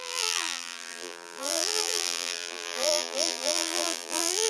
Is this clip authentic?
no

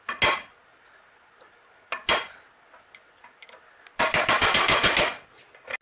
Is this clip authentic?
yes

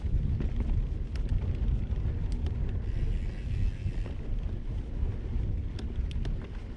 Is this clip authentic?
yes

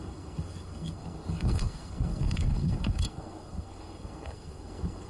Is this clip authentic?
no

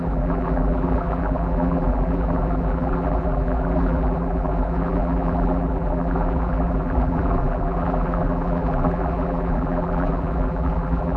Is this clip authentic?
no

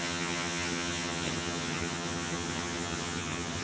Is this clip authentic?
no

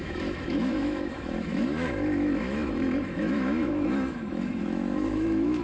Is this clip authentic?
no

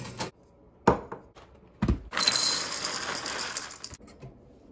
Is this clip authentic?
yes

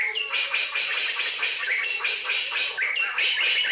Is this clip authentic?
yes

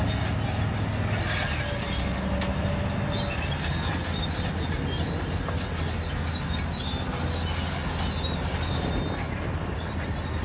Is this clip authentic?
yes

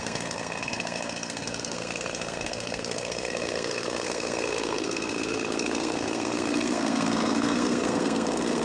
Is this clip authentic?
no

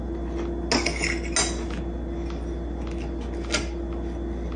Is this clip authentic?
yes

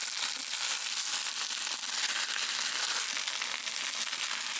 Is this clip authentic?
yes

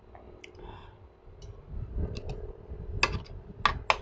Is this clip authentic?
yes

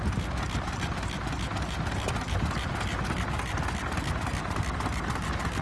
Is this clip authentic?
yes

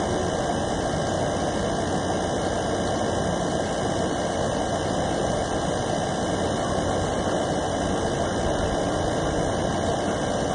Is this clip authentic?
yes